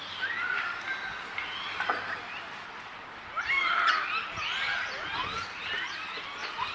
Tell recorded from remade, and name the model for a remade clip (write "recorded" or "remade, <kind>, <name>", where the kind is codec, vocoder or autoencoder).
recorded